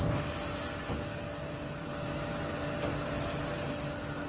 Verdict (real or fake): real